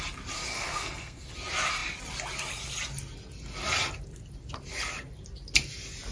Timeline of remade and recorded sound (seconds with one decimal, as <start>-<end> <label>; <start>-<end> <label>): 0.0-0.5 recorded; 0.5-1.3 remade; 1.3-6.1 recorded